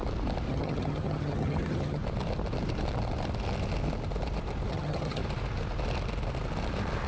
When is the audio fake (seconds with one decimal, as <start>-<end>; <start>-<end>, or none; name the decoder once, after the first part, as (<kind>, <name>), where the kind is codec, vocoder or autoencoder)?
0.5-2.0 (vocoder, HiFi-GAN); 4.7-5.2

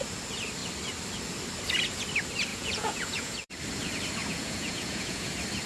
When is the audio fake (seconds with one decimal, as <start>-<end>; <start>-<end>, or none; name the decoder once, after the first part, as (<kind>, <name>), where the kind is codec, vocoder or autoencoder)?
2.5-3.5 (vocoder, Vocos); 4.2-5.3

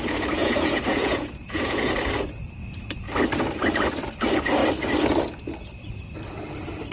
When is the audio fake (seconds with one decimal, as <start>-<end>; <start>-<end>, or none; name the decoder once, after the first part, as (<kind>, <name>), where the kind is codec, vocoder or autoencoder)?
0.4-1.9 (vocoder, Vocos)

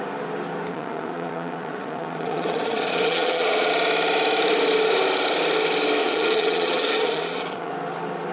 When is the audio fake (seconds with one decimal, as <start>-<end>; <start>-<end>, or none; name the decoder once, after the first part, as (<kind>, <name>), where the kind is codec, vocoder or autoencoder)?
0.7-3.7 (vocoder, Vocos); 6.0-7.7

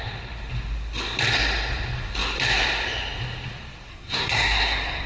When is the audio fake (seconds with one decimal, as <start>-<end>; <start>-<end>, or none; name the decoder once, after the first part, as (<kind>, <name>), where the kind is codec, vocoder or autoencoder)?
3.9-5.1 (codec, SNAC)

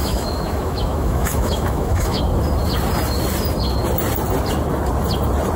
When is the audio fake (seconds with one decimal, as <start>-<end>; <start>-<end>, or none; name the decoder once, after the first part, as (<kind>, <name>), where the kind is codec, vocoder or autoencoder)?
0.0-2.2 (autoencoder, DAC-VAE)

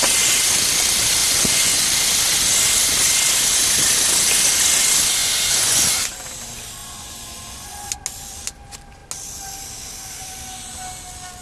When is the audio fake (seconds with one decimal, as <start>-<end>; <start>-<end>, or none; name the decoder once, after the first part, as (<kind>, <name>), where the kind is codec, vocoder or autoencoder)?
1.2-1.8 (vocoder, Vocos); 5.2-5.9; 6.8-7.9